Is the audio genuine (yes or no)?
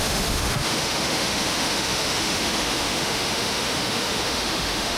no